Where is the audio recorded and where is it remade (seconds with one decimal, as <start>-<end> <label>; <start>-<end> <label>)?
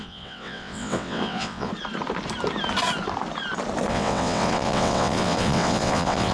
0.0-1.7 remade; 1.7-3.9 recorded; 3.9-6.3 remade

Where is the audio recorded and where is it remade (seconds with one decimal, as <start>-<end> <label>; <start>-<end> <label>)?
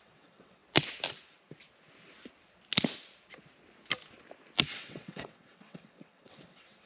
0.0-0.6 remade; 0.6-4.7 recorded; 4.7-6.9 remade